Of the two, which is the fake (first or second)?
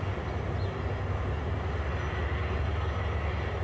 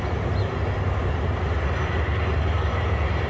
second